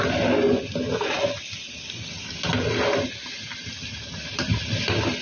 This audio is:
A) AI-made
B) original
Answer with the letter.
B